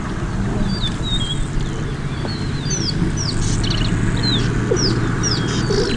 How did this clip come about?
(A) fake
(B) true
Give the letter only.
B